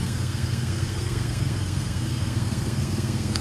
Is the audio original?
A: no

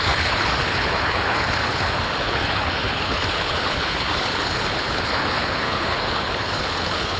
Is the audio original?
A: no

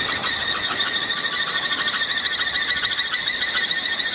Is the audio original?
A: yes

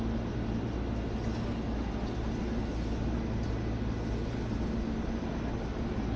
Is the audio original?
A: yes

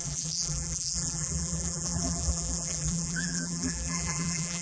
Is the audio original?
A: no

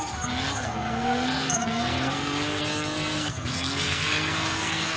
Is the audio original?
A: no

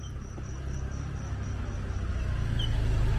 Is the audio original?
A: yes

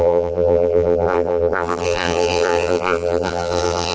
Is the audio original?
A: no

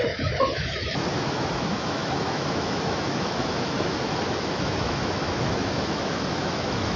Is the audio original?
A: no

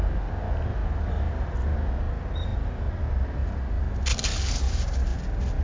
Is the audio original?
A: yes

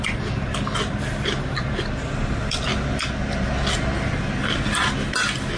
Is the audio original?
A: yes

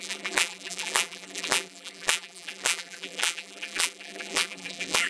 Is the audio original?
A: no